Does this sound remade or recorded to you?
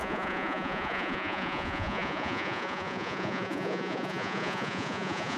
remade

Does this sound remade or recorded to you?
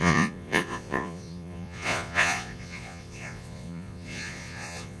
remade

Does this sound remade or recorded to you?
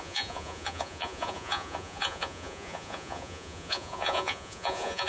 remade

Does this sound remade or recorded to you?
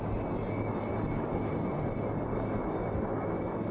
recorded